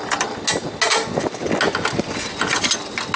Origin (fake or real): real